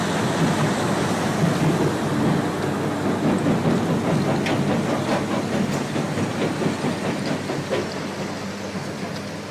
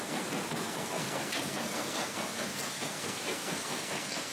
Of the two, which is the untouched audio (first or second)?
first